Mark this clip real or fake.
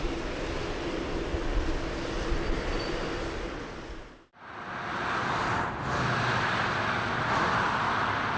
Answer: real